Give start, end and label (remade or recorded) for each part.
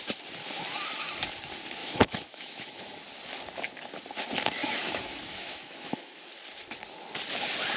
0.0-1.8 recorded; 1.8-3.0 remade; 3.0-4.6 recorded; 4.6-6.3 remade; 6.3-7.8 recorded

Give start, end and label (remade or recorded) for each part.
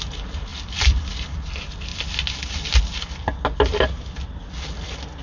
0.0-0.5 recorded; 0.5-1.3 remade; 1.3-5.2 recorded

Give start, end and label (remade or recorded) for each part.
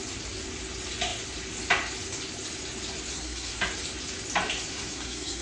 0.0-3.1 recorded; 3.1-3.6 remade; 3.6-4.7 recorded; 4.7-5.4 remade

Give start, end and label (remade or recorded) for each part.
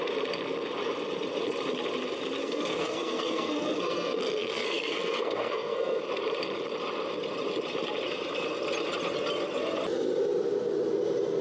0.0-2.4 recorded; 2.4-6.0 remade; 6.0-11.4 recorded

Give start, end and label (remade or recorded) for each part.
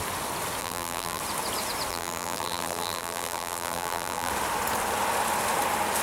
0.0-0.6 recorded; 0.6-1.2 remade; 1.2-1.9 recorded; 1.9-4.3 remade; 4.3-6.0 recorded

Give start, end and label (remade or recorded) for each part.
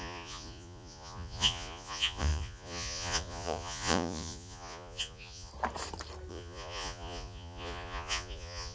0.0-5.5 remade; 5.5-6.3 recorded; 6.3-8.7 remade